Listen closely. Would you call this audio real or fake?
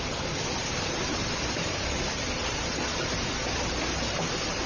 real